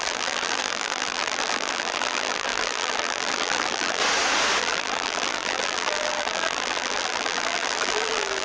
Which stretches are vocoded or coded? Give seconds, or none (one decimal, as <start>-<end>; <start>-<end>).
0.0-4.0; 4.6-8.4